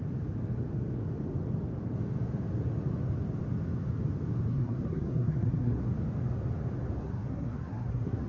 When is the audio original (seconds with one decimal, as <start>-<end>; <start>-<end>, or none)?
0.0-4.5; 5.8-7.0